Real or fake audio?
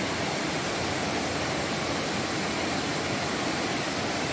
real